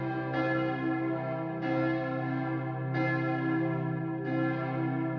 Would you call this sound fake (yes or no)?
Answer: no